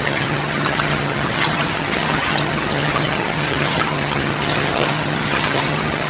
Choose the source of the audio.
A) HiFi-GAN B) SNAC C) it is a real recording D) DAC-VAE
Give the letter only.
A